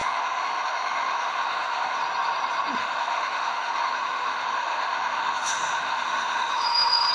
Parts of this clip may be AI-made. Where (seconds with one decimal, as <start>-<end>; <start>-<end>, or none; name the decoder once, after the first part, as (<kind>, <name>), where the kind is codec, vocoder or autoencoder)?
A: 0.0-2.0 (autoencoder, DAC-VAE); 2.8-7.1